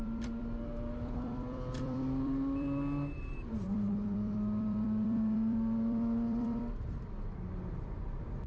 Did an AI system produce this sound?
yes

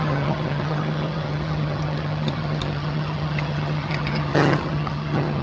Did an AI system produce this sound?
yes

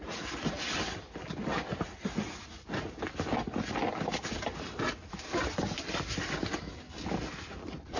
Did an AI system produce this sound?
no